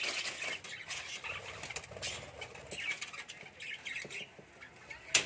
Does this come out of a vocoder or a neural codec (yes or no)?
no